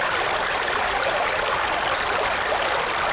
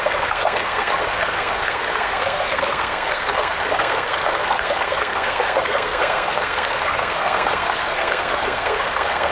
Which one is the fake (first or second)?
second